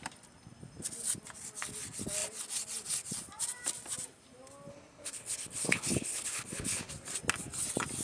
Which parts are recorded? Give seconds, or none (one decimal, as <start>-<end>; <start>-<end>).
0.0-4.7; 6.9-8.0